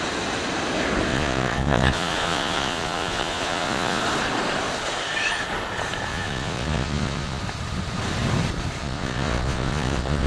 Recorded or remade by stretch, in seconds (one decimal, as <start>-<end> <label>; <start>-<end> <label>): 0.0-1.1 recorded; 1.1-4.0 remade; 4.0-6.1 recorded; 6.1-7.4 remade; 7.4-8.8 recorded; 8.8-10.3 remade